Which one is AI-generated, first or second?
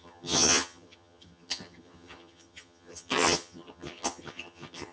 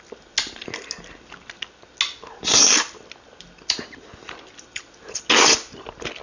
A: first